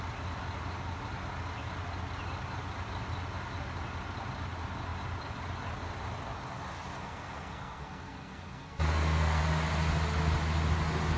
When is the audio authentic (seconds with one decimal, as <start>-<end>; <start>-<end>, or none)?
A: 0.0-6.9; 9.4-11.2